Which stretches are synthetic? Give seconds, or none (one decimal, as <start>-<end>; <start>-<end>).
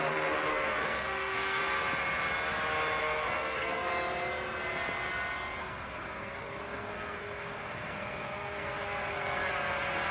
0.5-1.6; 3.0-3.9; 5.6-9.5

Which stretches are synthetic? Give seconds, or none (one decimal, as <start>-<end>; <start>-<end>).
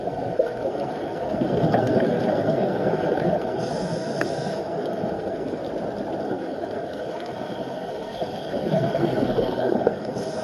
0.0-5.6; 6.2-10.4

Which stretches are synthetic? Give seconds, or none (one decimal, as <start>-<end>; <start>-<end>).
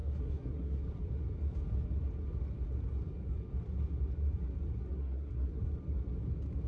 0.0-0.8; 5.0-5.6